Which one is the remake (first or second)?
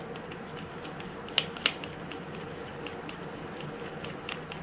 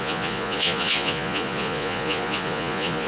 second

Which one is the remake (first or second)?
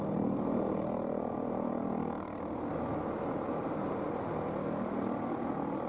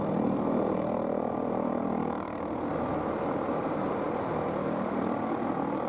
second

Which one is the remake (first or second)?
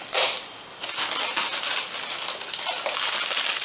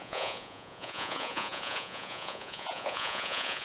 second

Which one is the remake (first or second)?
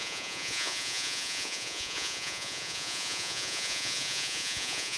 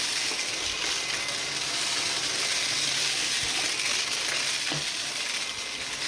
first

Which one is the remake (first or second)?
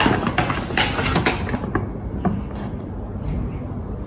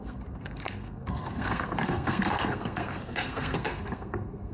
second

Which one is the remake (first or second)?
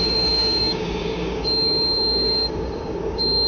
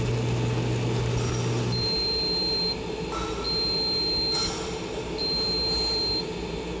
first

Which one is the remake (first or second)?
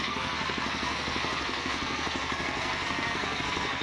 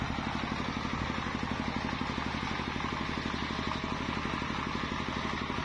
first